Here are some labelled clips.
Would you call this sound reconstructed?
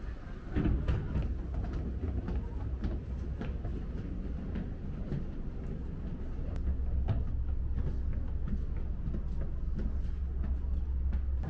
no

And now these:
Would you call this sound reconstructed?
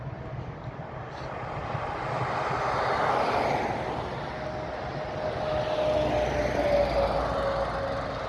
no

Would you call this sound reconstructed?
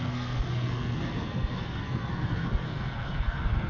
yes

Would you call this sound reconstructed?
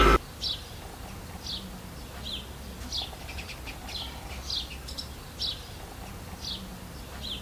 no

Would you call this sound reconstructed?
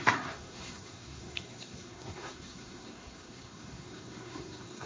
yes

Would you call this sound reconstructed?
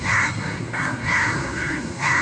yes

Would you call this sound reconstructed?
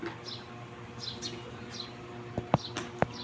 no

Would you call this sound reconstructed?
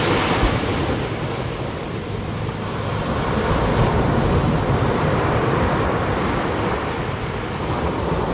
no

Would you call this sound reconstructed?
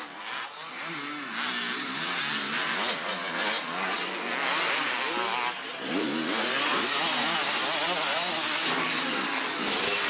no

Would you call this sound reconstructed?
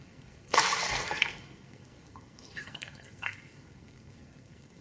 yes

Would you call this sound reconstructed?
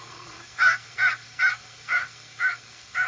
yes